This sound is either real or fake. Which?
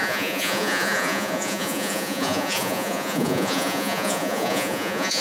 fake